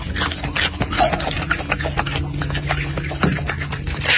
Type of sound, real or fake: real